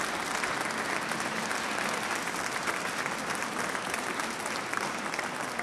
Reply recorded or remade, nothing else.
recorded